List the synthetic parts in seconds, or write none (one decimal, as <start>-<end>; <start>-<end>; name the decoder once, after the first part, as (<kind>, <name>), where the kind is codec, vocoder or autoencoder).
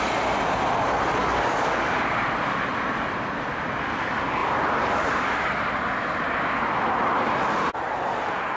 1.2-2.0 (codec, DAC)